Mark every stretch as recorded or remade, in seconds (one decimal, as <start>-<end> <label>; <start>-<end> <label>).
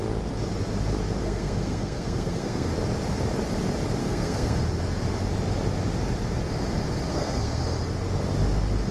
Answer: 0.0-1.2 recorded; 1.2-2.7 remade; 2.7-4.0 recorded; 4.0-4.6 remade; 4.6-7.1 recorded; 7.1-7.6 remade; 7.6-8.9 recorded